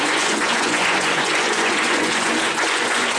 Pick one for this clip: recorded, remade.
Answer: remade